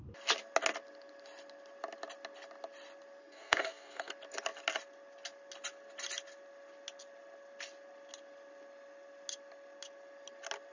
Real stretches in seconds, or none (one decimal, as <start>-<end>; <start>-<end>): 0.0-3.2; 4.1-10.7